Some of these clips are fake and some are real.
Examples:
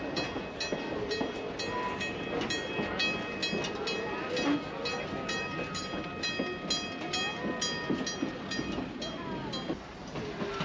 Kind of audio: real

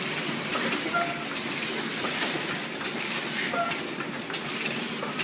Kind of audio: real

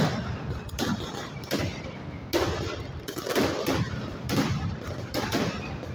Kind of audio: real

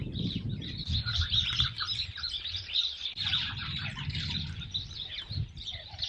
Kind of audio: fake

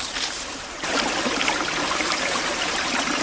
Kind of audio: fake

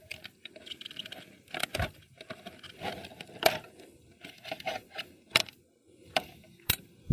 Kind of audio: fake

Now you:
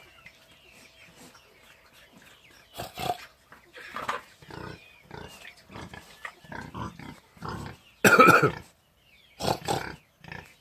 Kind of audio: real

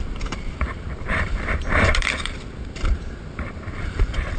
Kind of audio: fake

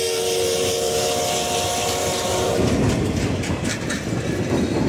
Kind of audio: real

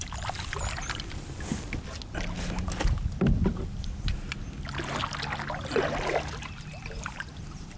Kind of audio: real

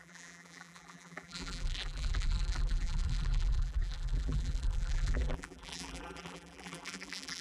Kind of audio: fake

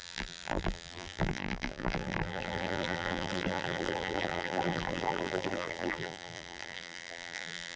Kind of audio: fake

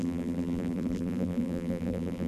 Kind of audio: fake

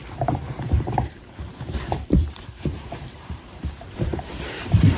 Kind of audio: fake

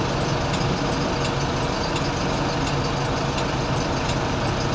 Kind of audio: real